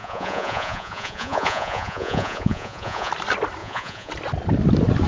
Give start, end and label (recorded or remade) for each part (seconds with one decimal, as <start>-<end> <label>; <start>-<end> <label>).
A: 0.0-3.1 remade; 3.1-3.6 recorded; 3.6-4.1 remade; 4.1-5.1 recorded